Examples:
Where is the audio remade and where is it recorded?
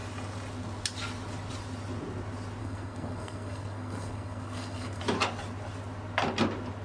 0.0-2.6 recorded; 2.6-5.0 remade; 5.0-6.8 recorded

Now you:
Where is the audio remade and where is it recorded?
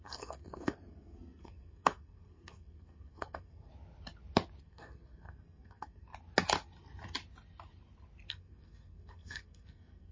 0.0-3.7 remade; 3.7-4.6 recorded; 4.6-6.1 remade; 6.1-8.3 recorded; 8.3-10.1 remade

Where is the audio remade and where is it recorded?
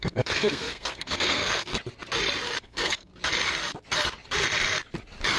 0.0-1.7 remade; 1.7-2.6 recorded; 2.6-3.1 remade; 3.1-5.4 recorded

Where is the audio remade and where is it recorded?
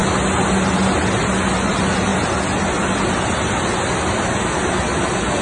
0.0-5.4 recorded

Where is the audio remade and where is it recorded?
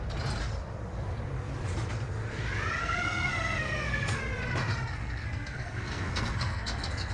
0.0-2.8 recorded; 2.8-4.2 remade; 4.2-4.9 recorded; 4.9-7.1 remade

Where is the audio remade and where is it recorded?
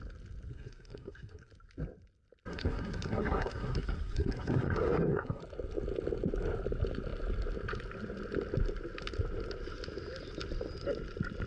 0.0-0.5 recorded; 0.5-1.5 remade; 1.5-2.5 recorded; 2.5-5.4 remade; 5.4-11.5 recorded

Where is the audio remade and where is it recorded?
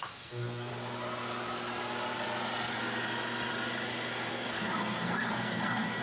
0.0-0.7 remade; 0.7-4.3 recorded; 4.3-6.0 remade